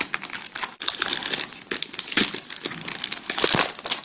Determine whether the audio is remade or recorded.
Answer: recorded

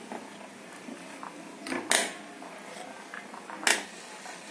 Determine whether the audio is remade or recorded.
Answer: recorded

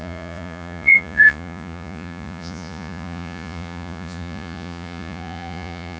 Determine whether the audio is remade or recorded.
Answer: remade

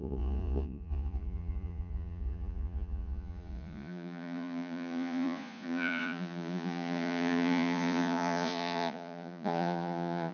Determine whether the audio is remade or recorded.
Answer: remade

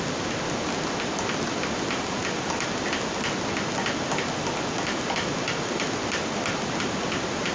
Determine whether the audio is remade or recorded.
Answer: recorded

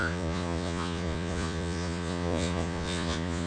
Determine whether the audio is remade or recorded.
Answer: remade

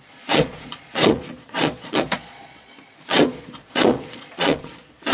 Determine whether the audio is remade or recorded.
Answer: remade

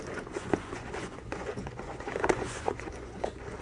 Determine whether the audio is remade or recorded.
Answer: remade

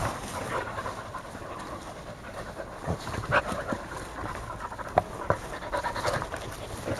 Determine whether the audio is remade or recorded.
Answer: recorded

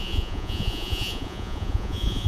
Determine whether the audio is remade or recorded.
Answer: remade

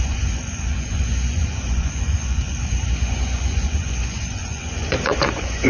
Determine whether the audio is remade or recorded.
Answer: remade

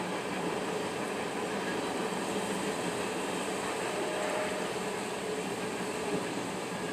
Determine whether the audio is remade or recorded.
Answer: recorded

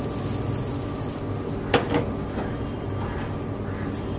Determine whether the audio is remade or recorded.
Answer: recorded